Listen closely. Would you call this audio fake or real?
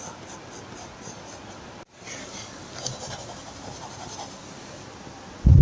real